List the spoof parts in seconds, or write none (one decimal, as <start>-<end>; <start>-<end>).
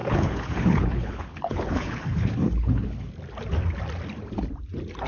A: 0.0-3.1